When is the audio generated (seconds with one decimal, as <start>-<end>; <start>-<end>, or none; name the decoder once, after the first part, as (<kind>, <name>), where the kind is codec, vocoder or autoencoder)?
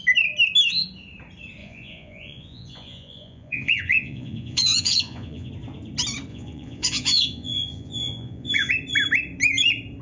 1.6-5.5 (vocoder, Vocos); 6.3-8.7